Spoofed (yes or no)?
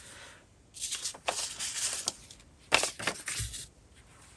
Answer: no